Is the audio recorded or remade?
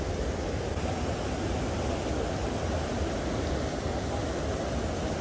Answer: recorded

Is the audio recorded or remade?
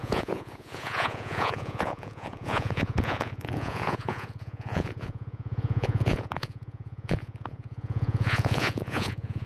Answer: remade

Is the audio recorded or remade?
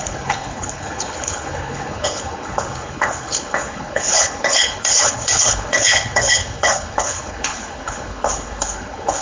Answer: remade